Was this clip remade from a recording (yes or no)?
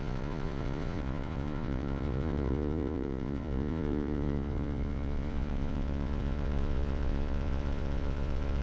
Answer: yes